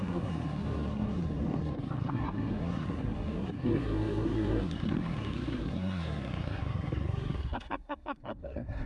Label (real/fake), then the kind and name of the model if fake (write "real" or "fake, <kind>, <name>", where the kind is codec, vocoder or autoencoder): fake, codec, SNAC